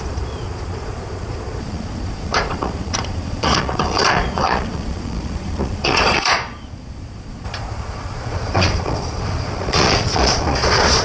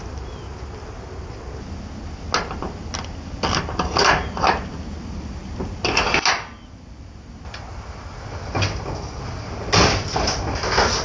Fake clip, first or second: first